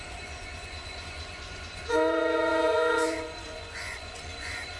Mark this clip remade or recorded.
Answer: remade